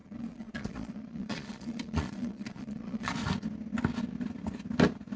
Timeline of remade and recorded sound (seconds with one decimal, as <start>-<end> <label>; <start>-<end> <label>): 0.0-3.1 remade; 3.1-5.2 recorded